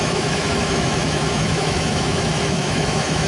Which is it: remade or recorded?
remade